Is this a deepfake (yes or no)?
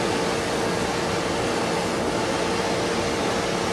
no